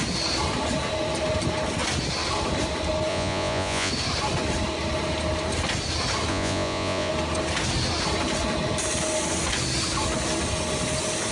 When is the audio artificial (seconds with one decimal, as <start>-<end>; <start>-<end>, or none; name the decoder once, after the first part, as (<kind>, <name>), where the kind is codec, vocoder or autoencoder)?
3.1-3.9 (vocoder, Vocos); 6.3-7.1